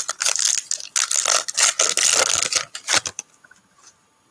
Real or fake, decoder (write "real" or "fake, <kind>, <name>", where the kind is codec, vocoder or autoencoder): real